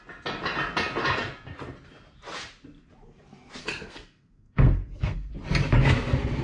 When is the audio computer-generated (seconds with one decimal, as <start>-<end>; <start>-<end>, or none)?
3.6-5.3